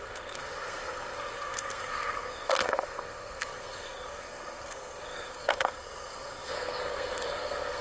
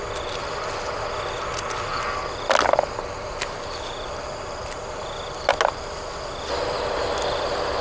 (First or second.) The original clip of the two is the second